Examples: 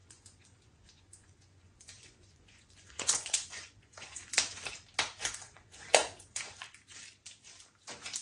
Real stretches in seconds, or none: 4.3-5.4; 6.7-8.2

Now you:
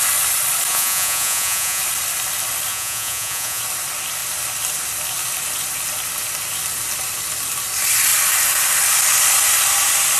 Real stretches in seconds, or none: 0.0-0.7; 1.8-2.7; 3.6-10.2

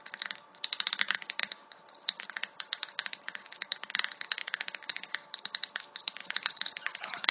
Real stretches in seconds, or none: 0.0-1.4; 3.4-4.4; 5.1-6.2

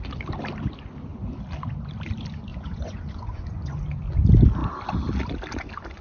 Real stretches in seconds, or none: 0.0-2.5; 3.8-6.0

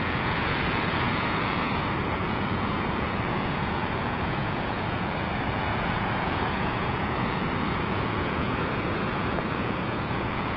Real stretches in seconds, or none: none

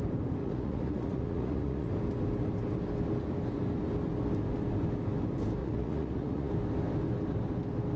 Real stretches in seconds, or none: 0.0-0.4; 1.9-5.6; 6.5-8.0